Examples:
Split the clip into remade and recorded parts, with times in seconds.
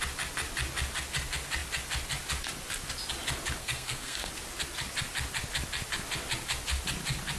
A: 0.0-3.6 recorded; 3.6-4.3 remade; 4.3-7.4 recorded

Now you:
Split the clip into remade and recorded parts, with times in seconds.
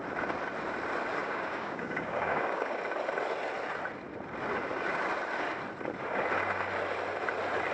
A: 0.0-1.2 recorded; 1.2-2.8 remade; 2.8-7.7 recorded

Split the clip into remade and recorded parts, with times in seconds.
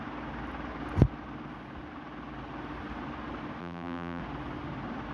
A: 0.0-3.6 recorded; 3.6-4.2 remade; 4.2-5.1 recorded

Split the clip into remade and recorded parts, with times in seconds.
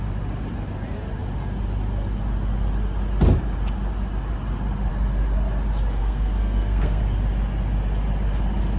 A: 0.0-6.0 recorded; 6.0-7.0 remade; 7.0-8.8 recorded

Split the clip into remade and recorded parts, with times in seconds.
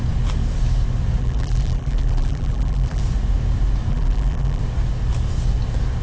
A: 0.0-1.2 recorded; 1.2-3.0 remade; 3.0-3.9 recorded; 3.9-4.6 remade; 4.6-6.0 recorded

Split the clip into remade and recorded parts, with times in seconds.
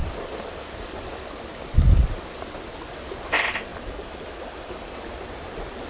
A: 0.0-5.9 recorded